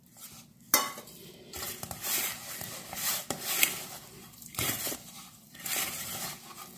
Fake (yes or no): no